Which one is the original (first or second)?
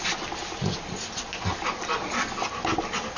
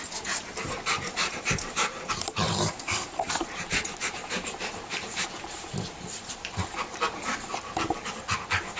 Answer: first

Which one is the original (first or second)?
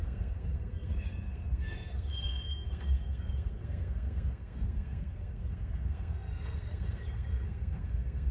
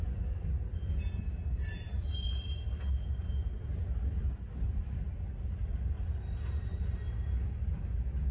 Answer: second